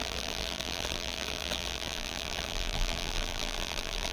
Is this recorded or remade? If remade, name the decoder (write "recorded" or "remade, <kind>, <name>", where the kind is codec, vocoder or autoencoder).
remade, vocoder, BigVGAN v2